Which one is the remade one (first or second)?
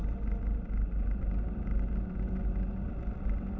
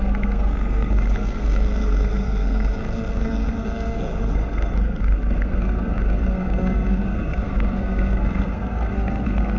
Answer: second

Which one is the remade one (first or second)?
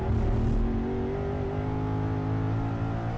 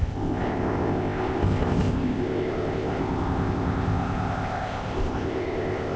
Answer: second